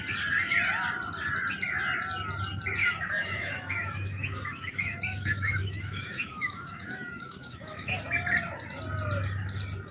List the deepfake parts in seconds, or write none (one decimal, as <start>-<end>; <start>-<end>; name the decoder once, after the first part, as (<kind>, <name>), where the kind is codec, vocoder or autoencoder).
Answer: 2.8-8.0 (autoencoder, DAC-VAE)